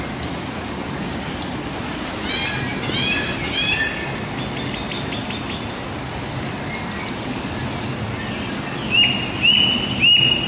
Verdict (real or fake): real